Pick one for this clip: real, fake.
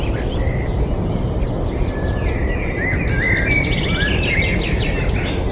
real